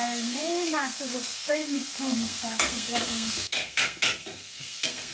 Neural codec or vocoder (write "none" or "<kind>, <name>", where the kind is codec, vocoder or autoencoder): codec, SNAC